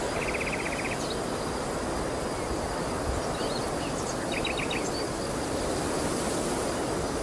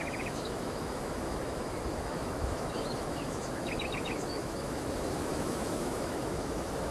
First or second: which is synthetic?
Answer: second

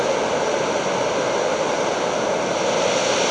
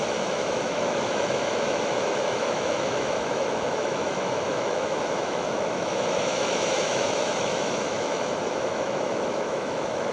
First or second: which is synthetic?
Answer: second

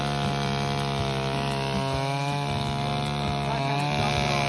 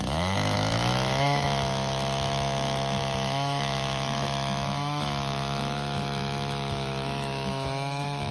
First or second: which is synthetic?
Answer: second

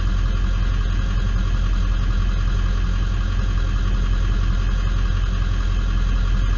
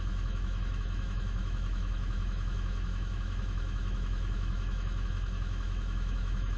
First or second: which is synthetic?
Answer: second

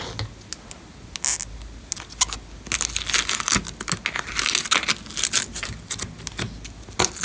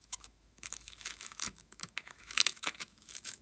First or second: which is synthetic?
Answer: second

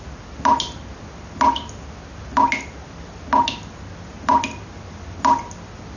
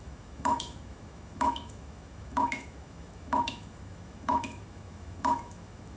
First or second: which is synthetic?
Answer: second